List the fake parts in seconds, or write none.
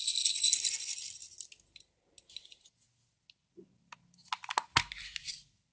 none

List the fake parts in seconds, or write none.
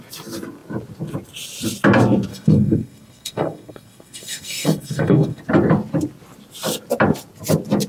2.3-5.4 (codec, SNAC)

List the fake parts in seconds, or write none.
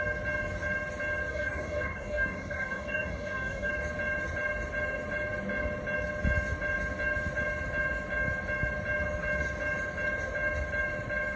1.3-3.7 (codec, DAC)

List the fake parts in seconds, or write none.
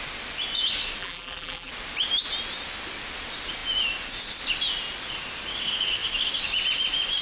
1.0-1.7 (vocoder, BigVGAN v2)